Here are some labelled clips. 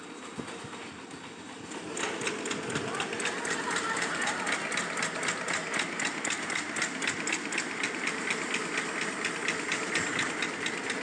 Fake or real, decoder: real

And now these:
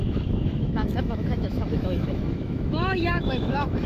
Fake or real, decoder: fake, autoencoder, DAC-VAE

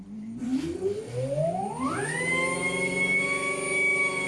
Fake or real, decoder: real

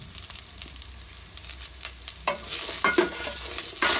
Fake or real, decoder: real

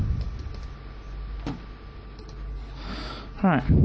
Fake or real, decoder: real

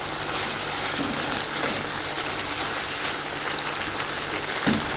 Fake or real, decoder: real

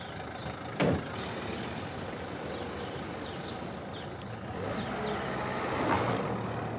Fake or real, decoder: real